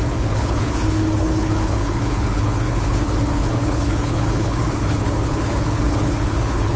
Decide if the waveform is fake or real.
fake